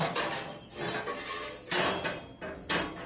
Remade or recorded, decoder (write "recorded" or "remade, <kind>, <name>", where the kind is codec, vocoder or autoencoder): recorded